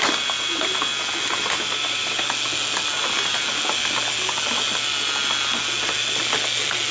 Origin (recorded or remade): recorded